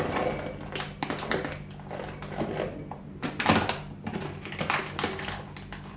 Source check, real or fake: real